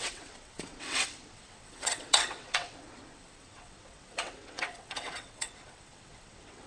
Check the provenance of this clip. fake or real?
fake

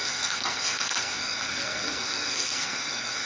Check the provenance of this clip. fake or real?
fake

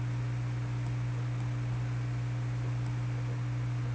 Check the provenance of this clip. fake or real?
real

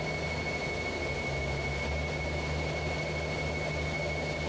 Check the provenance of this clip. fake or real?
real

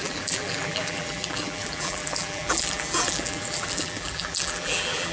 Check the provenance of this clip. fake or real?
fake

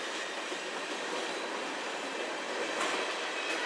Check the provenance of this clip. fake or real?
real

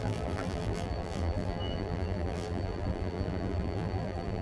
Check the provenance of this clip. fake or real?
fake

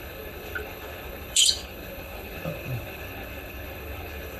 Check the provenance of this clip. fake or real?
fake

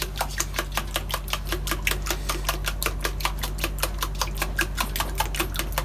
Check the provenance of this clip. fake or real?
real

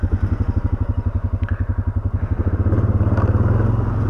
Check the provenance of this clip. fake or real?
real